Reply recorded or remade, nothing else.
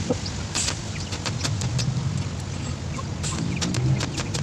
recorded